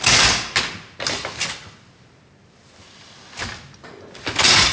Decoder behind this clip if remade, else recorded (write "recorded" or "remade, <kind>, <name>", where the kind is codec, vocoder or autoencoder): recorded